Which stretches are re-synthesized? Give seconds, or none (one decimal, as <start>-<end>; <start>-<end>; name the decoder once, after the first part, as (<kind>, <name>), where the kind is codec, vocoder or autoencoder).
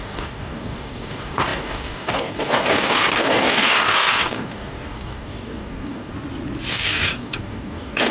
0.0-6.1 (codec, DAC); 6.7-8.1